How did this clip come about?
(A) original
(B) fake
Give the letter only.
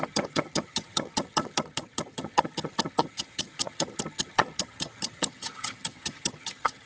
B